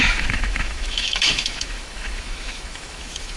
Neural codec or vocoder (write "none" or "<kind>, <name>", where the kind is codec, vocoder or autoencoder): autoencoder, DAC-VAE